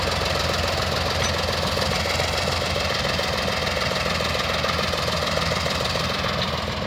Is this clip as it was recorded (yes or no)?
yes